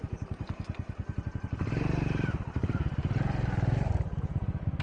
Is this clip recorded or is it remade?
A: remade